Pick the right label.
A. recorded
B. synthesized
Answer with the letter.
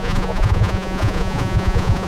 B